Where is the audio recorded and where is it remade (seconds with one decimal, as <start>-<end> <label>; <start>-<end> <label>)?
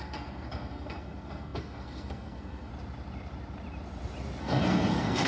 0.0-2.7 remade; 2.7-4.4 recorded; 4.4-5.3 remade